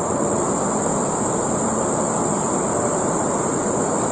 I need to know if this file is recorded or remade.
recorded